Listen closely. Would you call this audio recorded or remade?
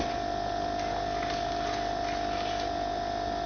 recorded